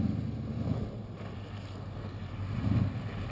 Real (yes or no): yes